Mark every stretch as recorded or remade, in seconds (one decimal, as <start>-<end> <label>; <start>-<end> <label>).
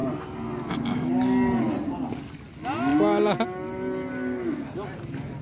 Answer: 0.0-5.4 recorded